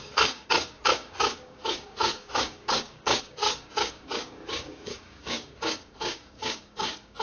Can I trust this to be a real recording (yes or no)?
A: no